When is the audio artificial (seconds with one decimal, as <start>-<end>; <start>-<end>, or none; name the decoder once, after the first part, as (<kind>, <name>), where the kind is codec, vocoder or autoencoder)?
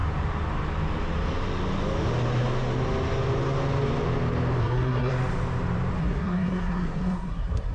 4.6-5.1 (codec, SNAC); 6.0-7.7